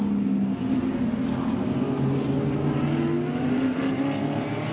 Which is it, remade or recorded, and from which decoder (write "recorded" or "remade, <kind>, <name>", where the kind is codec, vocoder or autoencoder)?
recorded